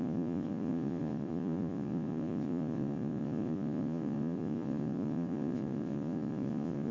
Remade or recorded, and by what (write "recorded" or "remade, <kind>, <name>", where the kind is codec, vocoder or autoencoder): remade, vocoder, Vocos